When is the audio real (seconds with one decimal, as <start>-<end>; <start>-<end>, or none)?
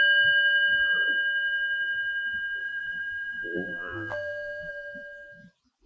0.0-2.6; 4.7-5.9